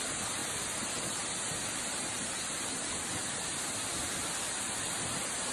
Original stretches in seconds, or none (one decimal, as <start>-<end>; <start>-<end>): 0.0-5.5